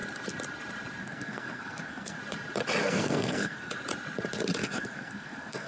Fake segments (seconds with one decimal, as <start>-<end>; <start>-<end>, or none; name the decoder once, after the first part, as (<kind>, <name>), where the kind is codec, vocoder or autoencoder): 1.0-2.2 (codec, SNAC); 2.8-3.7; 4.6-5.7